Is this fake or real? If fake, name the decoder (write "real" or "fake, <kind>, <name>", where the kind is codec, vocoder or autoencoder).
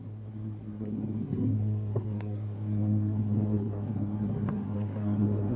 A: fake, codec, SNAC